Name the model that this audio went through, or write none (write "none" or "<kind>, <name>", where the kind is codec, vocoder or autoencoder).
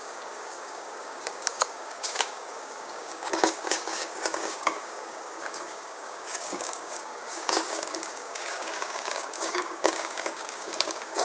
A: codec, DAC